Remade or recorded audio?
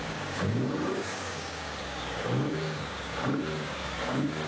remade